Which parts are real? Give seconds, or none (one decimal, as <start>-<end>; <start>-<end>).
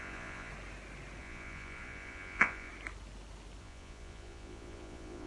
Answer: 0.5-1.2; 2.7-3.6